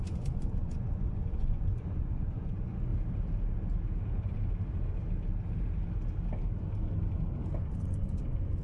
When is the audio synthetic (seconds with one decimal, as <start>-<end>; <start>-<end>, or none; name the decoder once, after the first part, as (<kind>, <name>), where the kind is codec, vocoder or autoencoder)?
0.0-2.9 (vocoder, Vocos); 7.6-8.6